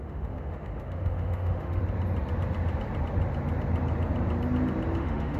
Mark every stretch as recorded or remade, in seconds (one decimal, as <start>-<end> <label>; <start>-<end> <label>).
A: 0.0-1.8 remade; 1.8-5.0 recorded; 5.0-5.4 remade